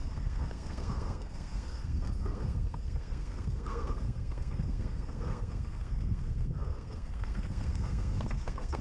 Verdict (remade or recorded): remade